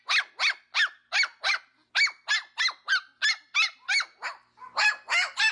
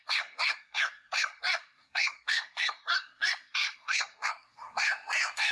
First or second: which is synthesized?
second